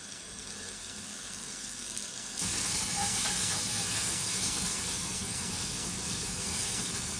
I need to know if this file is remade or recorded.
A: remade